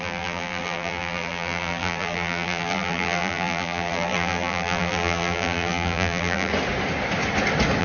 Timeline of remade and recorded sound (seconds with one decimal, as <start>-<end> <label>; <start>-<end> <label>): 0.0-6.5 remade; 6.5-7.8 recorded

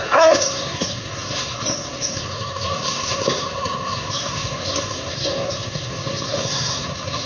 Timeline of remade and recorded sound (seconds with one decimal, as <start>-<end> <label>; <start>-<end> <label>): 0.0-7.3 remade